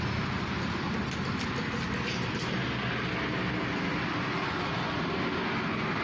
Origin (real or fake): real